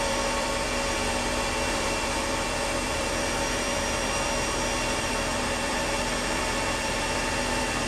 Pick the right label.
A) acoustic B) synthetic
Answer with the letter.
B